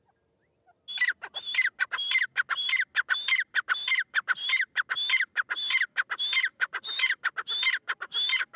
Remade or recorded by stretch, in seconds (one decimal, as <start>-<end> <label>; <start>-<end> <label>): 0.0-6.5 recorded; 6.5-7.2 remade; 7.2-8.6 recorded